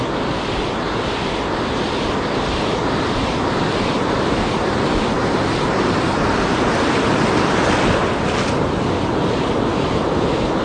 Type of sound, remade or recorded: recorded